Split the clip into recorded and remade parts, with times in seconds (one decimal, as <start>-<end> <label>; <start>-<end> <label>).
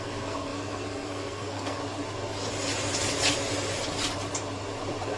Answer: 0.0-1.8 remade; 1.8-5.2 recorded